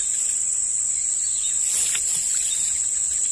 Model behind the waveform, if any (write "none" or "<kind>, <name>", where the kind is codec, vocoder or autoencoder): none